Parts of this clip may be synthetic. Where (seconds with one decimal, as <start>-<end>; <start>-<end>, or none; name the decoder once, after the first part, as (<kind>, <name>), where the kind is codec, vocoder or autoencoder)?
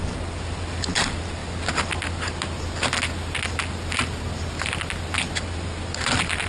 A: none